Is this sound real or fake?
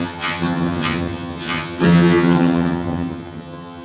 fake